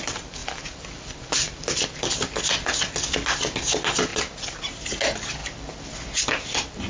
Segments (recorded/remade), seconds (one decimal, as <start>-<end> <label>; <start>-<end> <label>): 0.0-6.9 recorded